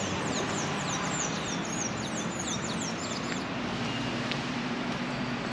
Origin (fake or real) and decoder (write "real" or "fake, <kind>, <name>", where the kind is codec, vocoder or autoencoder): real